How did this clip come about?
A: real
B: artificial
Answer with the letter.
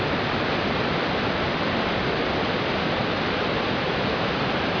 A